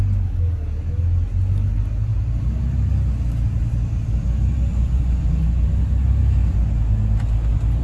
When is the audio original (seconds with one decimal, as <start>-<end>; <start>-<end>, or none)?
0.0-4.7; 5.4-7.8